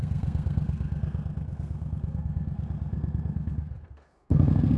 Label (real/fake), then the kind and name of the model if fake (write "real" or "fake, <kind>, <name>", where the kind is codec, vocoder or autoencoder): fake, codec, SNAC